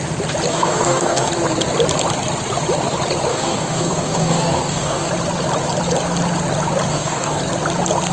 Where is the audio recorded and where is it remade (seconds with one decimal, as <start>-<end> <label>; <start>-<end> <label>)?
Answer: 0.0-0.5 recorded; 0.5-1.3 remade; 1.3-3.3 recorded; 3.3-5.1 remade; 5.1-6.9 recorded; 6.9-7.4 remade; 7.4-8.1 recorded